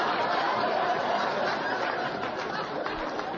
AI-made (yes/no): no